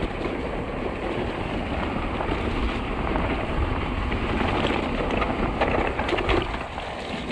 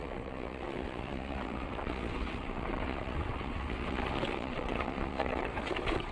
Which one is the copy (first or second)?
second